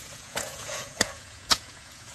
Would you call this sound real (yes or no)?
no